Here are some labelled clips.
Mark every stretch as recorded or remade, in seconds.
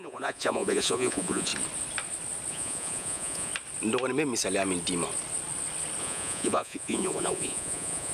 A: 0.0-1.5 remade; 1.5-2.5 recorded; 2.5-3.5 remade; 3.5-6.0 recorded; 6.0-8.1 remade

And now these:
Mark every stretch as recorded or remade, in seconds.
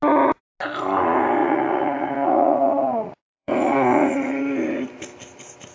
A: 0.0-1.4 recorded; 1.4-4.4 remade; 4.4-5.7 recorded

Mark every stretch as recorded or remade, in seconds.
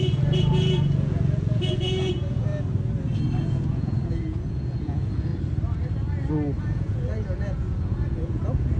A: 0.0-2.5 remade; 2.5-3.4 recorded; 3.4-5.3 remade; 5.3-6.6 recorded; 6.6-8.8 remade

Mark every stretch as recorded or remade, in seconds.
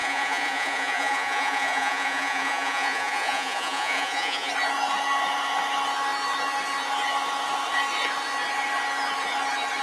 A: 0.0-4.5 remade; 4.5-9.8 recorded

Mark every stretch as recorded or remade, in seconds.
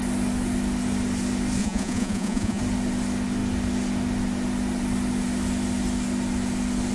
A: 0.0-1.6 recorded; 1.6-2.6 remade; 2.6-6.9 recorded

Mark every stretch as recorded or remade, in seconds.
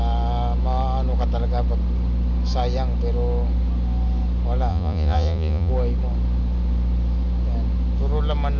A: 0.0-4.7 recorded; 4.7-5.7 remade; 5.7-8.6 recorded